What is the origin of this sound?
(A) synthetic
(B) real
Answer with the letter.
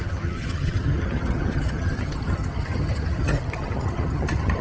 A